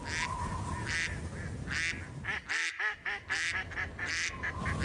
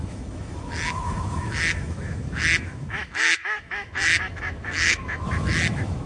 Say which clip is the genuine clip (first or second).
first